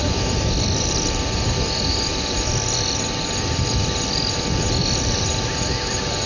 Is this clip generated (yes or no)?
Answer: yes